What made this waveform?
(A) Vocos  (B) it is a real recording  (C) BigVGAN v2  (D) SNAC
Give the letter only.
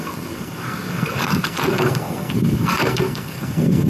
D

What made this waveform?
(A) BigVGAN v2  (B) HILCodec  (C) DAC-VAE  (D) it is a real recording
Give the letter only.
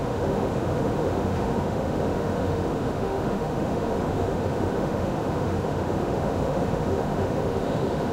C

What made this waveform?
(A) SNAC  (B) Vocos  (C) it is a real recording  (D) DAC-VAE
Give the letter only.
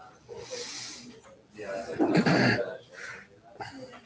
C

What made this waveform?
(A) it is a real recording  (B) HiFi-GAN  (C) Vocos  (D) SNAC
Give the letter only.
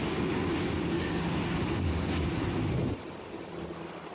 A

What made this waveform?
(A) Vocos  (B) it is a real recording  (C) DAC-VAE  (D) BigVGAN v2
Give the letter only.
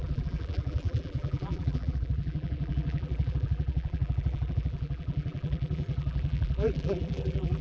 D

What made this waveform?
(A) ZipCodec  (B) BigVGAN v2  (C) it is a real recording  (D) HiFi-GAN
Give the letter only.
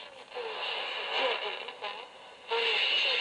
C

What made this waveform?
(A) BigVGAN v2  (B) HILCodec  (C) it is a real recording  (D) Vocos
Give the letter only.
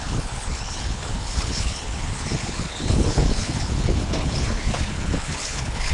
B